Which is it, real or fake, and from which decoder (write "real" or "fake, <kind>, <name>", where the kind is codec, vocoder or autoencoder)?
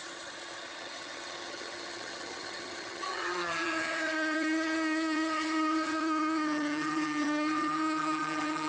fake, vocoder, HiFi-GAN